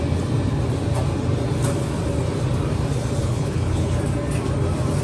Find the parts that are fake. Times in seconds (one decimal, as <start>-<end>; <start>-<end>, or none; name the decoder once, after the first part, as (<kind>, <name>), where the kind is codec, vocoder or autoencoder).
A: 3.2-3.9 (codec, HILCodec)